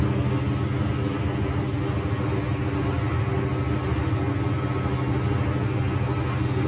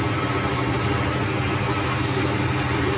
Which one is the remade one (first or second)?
second